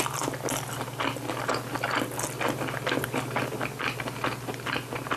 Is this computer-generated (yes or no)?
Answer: no